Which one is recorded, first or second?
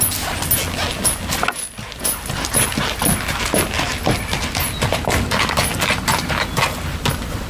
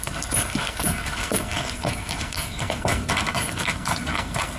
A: first